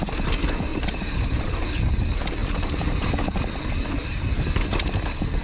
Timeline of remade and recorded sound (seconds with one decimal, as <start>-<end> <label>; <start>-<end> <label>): 0.0-0.7 recorded; 0.7-1.6 remade; 1.6-2.4 recorded; 2.4-4.2 remade; 4.2-5.4 recorded